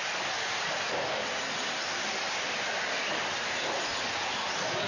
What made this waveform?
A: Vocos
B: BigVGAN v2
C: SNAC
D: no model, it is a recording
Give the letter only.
D